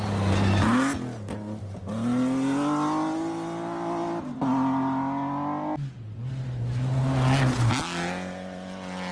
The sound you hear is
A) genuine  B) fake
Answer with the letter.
A